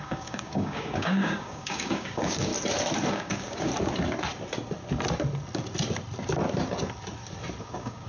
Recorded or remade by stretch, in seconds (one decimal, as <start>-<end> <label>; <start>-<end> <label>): 0.0-2.5 remade; 2.5-3.1 recorded; 3.1-3.7 remade; 3.7-7.6 recorded; 7.6-8.1 remade